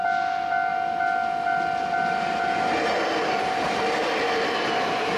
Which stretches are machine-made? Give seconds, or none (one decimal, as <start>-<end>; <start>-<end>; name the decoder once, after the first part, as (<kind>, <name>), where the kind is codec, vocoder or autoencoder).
none